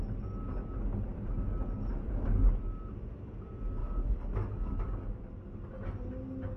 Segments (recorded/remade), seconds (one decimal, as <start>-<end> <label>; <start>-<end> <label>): 0.0-3.8 recorded; 3.8-5.2 remade; 5.2-6.6 recorded